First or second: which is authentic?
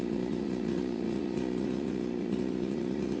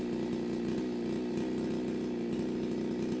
second